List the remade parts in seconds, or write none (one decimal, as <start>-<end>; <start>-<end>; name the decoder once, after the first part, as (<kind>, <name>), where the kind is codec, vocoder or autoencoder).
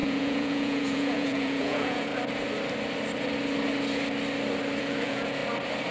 0.0-2.1 (vocoder, Vocos); 4.8-5.4